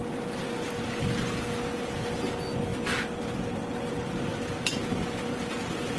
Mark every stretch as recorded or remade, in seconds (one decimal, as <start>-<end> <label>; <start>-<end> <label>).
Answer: 0.0-6.0 recorded